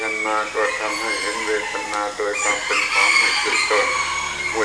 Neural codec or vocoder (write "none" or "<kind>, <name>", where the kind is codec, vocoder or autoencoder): none